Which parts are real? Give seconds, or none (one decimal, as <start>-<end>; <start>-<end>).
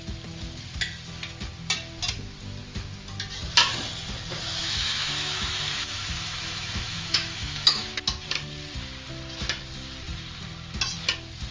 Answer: 0.0-4.6; 7.8-11.5